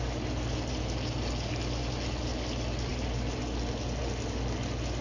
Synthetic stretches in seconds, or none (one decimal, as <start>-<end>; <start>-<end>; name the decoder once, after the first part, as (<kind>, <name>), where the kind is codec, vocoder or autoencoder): none